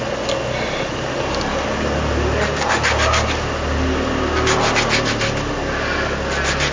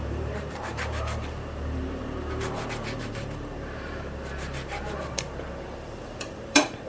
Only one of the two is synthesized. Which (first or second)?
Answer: second